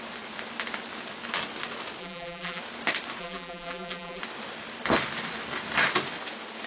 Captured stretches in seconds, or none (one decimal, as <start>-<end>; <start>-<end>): 0.0-2.0; 2.6-3.2; 4.2-6.7